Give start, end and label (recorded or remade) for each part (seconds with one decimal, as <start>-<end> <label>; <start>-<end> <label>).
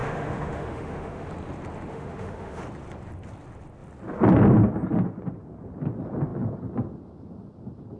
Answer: 0.0-1.3 remade; 1.3-1.9 recorded; 1.9-2.6 remade; 2.6-8.0 recorded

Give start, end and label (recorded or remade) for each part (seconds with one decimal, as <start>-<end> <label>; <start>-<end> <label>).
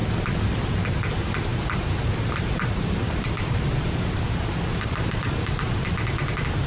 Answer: 0.0-1.5 recorded; 1.5-5.5 remade; 5.5-6.7 recorded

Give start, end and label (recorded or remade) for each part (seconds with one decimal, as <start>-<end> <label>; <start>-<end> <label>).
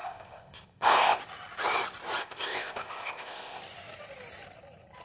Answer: 0.0-1.2 remade; 1.2-2.2 recorded; 2.2-3.6 remade; 3.6-5.0 recorded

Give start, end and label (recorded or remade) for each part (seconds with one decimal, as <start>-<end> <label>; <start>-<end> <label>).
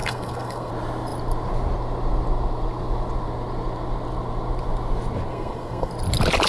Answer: 0.0-0.7 remade; 0.7-5.3 recorded; 5.3-5.9 remade; 5.9-6.5 recorded